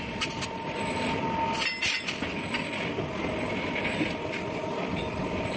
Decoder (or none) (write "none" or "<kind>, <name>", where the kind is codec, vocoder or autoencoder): none